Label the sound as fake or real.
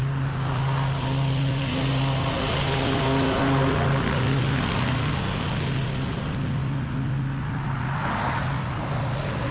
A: real